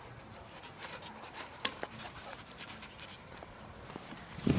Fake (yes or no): yes